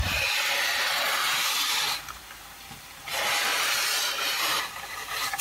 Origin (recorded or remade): recorded